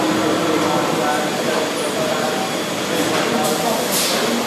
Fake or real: real